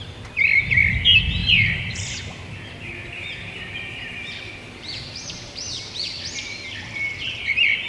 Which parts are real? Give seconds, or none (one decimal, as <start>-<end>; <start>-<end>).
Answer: 0.0-1.4; 5.7-7.9